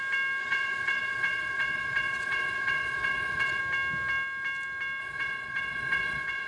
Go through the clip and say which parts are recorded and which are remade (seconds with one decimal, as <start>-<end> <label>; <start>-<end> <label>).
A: 0.0-0.4 recorded; 0.4-3.6 remade; 3.6-5.0 recorded; 5.0-6.5 remade